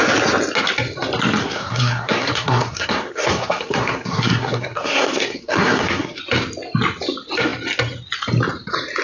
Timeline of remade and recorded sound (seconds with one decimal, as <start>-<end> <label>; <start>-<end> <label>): 0.0-1.4 recorded; 1.4-6.2 remade; 6.2-9.0 recorded